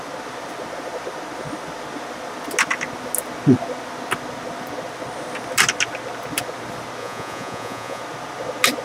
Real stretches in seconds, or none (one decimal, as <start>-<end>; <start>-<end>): 0.0-7.0; 8.0-8.8